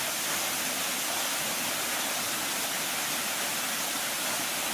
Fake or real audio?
real